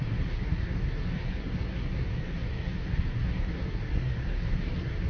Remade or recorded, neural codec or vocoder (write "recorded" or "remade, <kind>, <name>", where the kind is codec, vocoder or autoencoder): remade, codec, SNAC